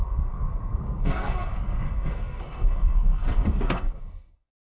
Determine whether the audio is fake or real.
fake